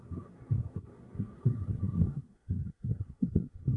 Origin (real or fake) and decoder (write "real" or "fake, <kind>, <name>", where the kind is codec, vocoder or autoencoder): fake, codec, SNAC